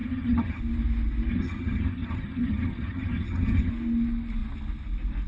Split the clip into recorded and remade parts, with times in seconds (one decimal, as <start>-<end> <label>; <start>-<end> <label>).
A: 0.0-0.6 remade; 0.6-1.3 recorded; 1.3-3.7 remade; 3.7-5.3 recorded